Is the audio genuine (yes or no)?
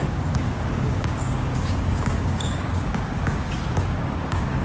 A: no